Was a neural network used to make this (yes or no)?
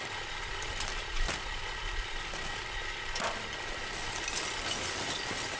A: no